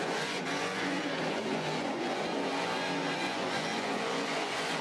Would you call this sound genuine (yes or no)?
no